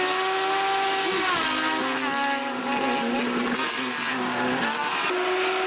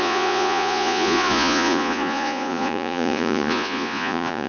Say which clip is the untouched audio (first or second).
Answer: first